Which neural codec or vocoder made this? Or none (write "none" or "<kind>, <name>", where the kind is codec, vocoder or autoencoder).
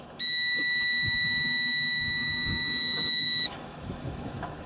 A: autoencoder, DAC-VAE